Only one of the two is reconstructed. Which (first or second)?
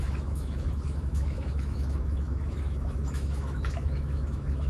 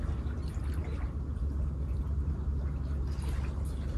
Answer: first